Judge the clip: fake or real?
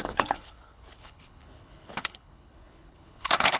fake